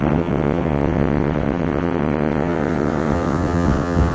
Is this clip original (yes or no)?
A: no